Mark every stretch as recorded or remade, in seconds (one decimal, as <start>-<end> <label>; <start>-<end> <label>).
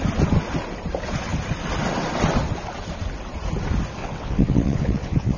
0.0-4.0 recorded; 4.0-5.4 remade